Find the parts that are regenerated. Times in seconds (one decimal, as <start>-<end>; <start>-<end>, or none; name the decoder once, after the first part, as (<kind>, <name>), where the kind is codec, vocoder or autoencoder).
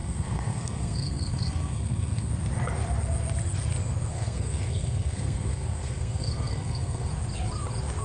0.0-2.3 (codec, SNAC); 4.1-7.1